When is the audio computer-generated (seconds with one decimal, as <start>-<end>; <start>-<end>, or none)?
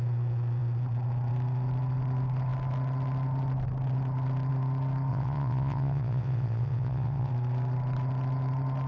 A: 5.1-7.3